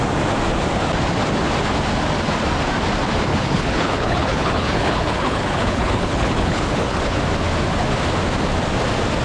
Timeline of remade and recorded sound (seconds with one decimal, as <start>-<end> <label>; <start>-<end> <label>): 0.0-3.3 recorded; 3.3-7.2 remade; 7.2-9.2 recorded